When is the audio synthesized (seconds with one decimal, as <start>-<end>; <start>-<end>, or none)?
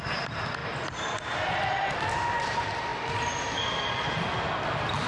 none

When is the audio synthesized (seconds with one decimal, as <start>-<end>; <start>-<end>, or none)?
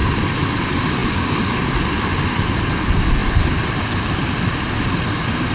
3.2-5.1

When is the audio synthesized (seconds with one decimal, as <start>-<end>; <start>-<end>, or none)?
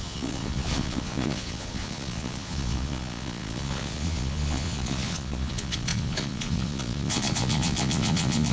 0.0-8.5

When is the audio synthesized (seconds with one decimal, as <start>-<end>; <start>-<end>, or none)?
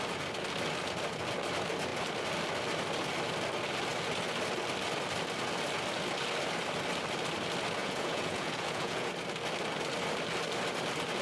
7.8-9.1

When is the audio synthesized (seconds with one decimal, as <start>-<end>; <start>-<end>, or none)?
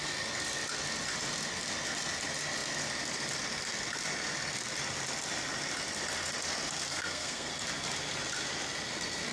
6.9-7.5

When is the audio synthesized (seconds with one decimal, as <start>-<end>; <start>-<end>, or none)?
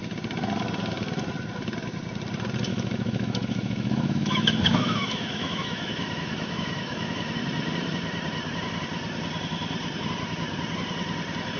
2.7-7.4